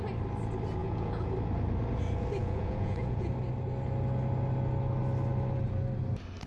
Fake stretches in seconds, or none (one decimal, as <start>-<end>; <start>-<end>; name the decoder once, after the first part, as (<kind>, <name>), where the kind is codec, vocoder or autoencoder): 0.8-1.3 (vocoder, Vocos); 2.4-3.3